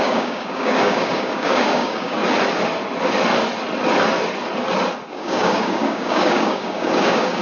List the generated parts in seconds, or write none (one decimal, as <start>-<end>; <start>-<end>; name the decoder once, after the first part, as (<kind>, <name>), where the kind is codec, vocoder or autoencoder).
0.0-2.2 (codec, DAC); 5.1-7.4